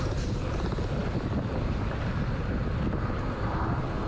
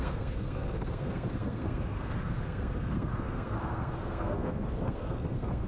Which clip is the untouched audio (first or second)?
first